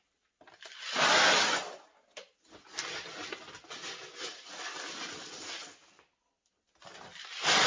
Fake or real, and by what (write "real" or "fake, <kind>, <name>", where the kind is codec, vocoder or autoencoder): real